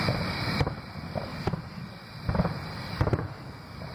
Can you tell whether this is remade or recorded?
remade